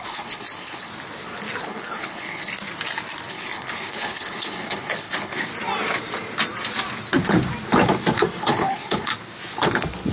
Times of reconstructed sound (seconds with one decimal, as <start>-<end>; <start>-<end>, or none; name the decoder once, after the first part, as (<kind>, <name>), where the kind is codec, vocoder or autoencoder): 0.0-0.9 (codec, HILCodec); 1.6-2.5; 3.3-5.5; 8.4-9.1